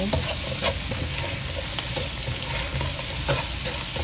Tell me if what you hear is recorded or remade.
recorded